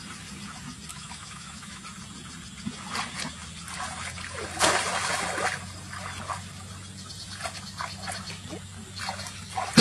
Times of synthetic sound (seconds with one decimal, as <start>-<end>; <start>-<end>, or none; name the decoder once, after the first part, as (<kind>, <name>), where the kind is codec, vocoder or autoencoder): 0.9-1.8 (autoencoder, DAC-VAE)